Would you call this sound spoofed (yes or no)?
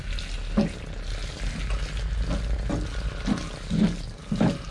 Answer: no